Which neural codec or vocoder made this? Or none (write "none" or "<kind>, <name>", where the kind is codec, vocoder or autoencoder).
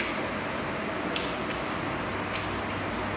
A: none